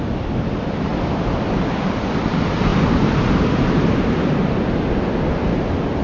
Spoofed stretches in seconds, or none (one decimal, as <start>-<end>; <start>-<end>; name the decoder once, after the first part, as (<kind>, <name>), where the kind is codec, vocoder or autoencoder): none